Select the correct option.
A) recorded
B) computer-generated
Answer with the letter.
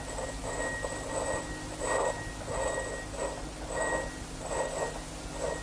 A